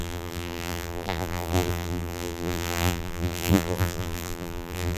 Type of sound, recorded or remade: remade